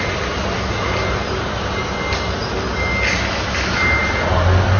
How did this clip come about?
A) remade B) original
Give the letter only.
B